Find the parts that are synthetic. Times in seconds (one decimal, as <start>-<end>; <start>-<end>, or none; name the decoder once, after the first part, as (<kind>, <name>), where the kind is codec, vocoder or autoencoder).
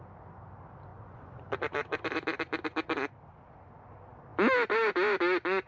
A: 0.9-3.1 (vocoder, Vocos)